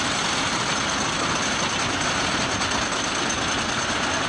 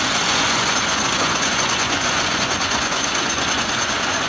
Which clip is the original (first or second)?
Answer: first